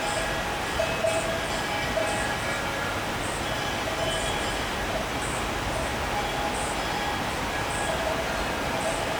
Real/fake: real